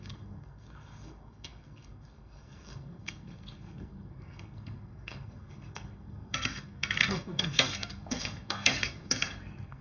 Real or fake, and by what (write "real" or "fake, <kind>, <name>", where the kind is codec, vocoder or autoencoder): fake, codec, SNAC